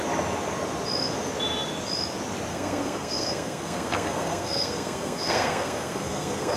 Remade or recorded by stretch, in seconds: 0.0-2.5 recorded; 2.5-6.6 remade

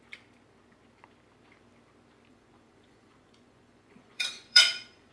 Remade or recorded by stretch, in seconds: 0.0-2.3 recorded; 2.3-5.1 remade

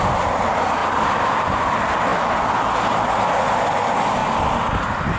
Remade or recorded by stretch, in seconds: 0.0-5.2 recorded